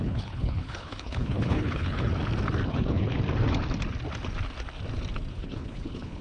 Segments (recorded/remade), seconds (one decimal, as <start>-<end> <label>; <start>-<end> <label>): 0.0-2.1 remade; 2.1-2.7 recorded; 2.7-3.1 remade; 3.1-5.3 recorded; 5.3-6.2 remade